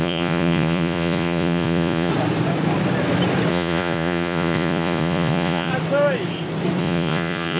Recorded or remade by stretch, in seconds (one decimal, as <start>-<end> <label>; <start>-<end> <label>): 0.0-2.1 remade; 2.1-3.5 recorded; 3.5-5.7 remade; 5.7-6.8 recorded; 6.8-7.6 remade

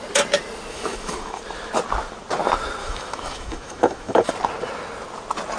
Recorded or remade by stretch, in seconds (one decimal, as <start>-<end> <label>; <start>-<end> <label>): 0.0-0.7 recorded; 0.7-1.4 remade; 1.4-2.8 recorded; 2.8-4.3 remade; 4.3-5.6 recorded

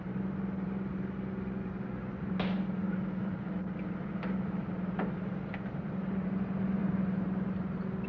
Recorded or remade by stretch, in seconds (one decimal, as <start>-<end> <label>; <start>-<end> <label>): 0.0-8.1 recorded

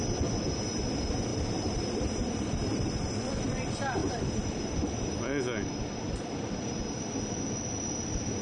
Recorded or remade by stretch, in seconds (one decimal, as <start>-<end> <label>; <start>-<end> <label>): 0.0-1.3 recorded; 1.3-3.3 remade; 3.3-4.0 recorded; 4.0-7.2 remade; 7.2-8.4 recorded

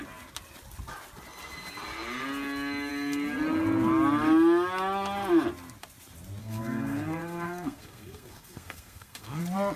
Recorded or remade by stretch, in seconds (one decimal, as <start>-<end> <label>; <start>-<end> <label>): 0.0-6.4 recorded; 6.4-9.4 remade; 9.4-9.8 recorded

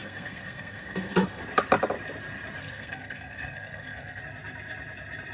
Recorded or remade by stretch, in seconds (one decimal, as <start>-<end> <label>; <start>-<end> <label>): 0.0-1.4 remade; 1.4-2.6 recorded; 2.6-4.2 remade; 4.2-5.3 recorded

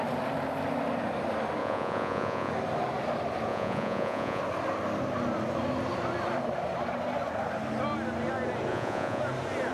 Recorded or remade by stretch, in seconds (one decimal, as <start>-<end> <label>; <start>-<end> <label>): 0.0-1.6 recorded; 1.6-2.5 remade; 2.5-3.5 recorded; 3.5-4.4 remade; 4.4-8.7 recorded; 8.7-9.2 remade; 9.2-9.7 recorded